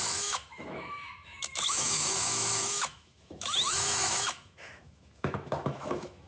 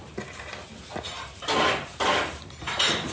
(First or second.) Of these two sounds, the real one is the second